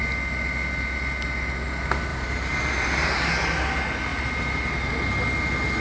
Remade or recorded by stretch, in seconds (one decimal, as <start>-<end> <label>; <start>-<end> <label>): 0.0-2.1 recorded; 2.1-3.3 remade; 3.3-4.1 recorded; 4.1-4.9 remade; 4.9-5.8 recorded